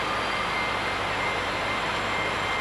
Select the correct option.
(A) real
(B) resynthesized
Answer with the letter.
A